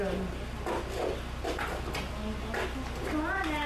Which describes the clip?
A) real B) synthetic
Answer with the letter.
A